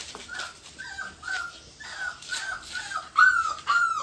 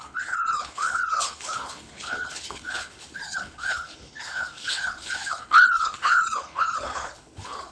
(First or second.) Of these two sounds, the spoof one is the second